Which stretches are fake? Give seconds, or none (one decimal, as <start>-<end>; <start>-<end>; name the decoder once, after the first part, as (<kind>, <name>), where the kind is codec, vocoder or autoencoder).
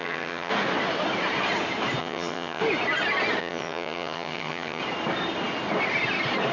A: 0.0-0.5 (vocoder, HiFi-GAN); 2.0-2.6; 3.4-4.8